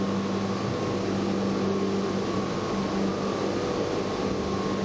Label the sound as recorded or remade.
recorded